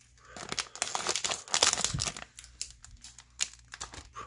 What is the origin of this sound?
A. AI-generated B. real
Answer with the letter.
B